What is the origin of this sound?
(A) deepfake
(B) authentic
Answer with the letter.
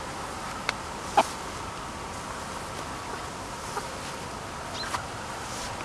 B